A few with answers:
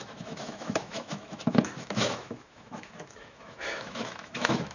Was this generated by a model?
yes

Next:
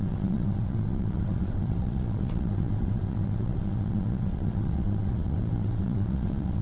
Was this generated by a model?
yes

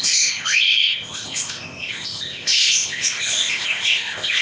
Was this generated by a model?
yes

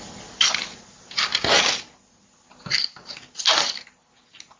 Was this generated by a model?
no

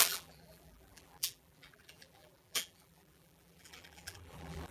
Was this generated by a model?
yes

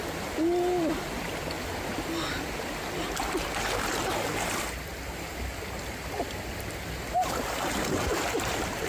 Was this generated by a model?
no